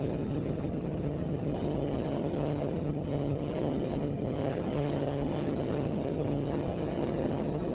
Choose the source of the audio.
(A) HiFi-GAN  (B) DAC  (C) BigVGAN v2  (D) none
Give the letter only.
A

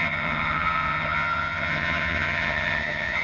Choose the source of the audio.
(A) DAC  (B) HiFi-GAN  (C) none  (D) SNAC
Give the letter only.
B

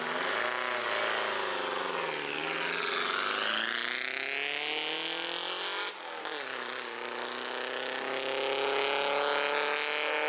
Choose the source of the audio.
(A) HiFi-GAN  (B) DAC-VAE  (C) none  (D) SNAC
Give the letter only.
C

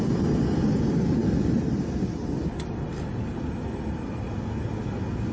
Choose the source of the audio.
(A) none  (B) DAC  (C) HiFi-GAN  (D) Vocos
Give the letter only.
A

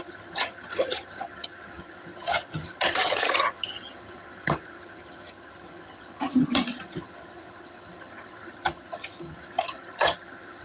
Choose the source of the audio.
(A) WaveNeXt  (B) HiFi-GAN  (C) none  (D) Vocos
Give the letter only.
B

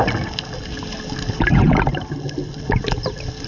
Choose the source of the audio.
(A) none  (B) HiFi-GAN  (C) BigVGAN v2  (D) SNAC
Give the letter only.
A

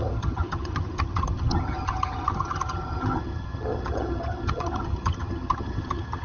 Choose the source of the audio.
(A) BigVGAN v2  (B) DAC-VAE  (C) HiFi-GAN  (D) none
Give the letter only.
C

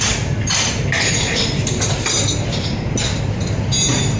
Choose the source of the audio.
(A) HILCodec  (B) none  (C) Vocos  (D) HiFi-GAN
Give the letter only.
B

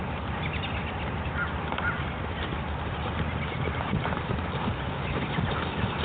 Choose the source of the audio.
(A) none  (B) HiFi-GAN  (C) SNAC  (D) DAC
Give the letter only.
A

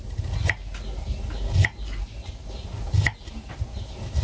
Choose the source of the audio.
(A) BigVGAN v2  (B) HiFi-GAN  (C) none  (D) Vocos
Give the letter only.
C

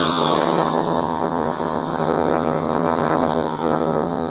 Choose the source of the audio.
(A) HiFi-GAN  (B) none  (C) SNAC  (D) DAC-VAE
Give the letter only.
A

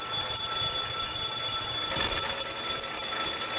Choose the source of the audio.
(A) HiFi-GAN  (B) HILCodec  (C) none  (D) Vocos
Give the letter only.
C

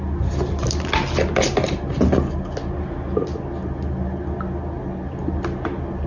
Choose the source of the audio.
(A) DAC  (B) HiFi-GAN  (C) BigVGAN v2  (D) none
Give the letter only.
D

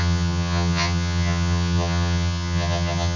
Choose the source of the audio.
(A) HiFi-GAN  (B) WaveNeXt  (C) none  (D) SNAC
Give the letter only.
A